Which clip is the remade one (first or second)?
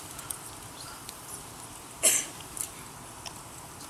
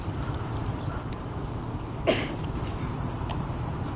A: first